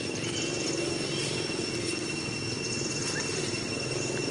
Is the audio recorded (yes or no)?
yes